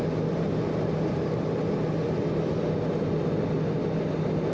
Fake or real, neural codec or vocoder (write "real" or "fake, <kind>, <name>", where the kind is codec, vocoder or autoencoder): real